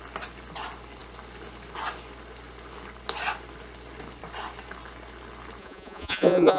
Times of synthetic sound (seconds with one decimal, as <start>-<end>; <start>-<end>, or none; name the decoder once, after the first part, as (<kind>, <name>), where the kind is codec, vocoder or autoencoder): 5.6-6.6 (vocoder, Vocos)